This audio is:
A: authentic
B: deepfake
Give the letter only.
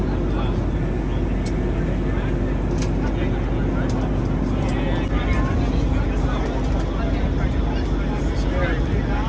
A